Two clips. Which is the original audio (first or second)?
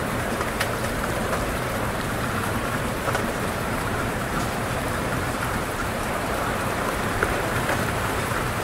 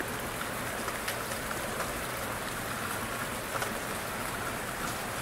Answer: second